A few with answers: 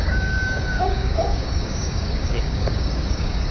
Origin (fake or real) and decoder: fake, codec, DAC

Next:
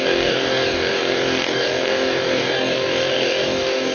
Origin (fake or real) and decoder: fake, codec, DAC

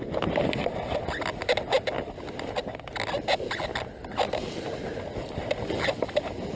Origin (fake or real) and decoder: real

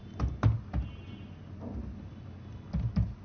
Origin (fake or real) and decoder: real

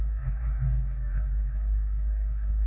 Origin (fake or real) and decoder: fake, codec, DAC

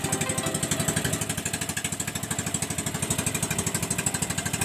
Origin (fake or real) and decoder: real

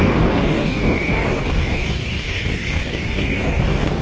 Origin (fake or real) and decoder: fake, codec, DAC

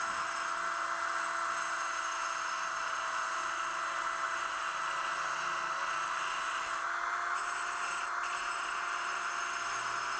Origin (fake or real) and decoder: real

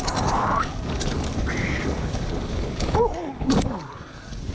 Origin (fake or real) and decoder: fake, codec, DAC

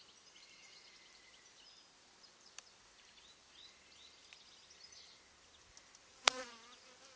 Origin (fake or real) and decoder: real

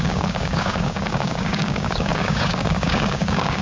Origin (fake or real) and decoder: fake, codec, DAC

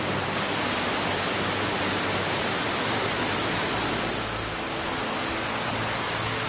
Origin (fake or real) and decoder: real